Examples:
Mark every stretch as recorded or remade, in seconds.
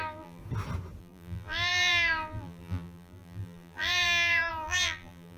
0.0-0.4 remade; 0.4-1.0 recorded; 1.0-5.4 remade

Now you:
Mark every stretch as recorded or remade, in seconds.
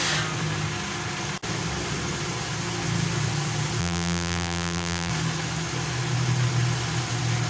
0.0-3.8 recorded; 3.8-5.1 remade; 5.1-7.5 recorded